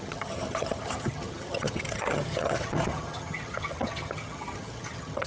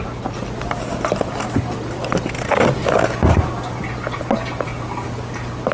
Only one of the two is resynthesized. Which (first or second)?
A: first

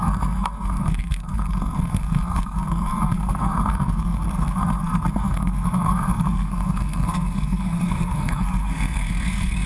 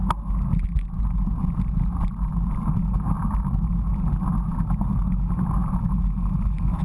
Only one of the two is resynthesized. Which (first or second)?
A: first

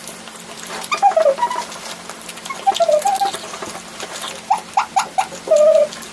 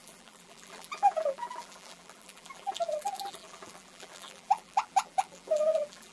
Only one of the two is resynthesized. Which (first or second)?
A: second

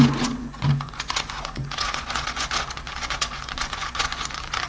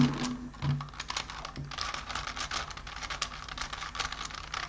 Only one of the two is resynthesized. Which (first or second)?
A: first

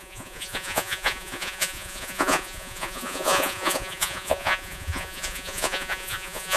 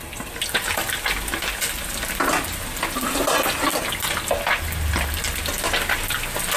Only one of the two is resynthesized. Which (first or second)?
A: first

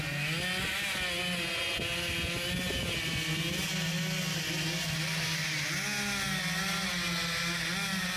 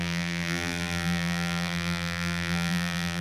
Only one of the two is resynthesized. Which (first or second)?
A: second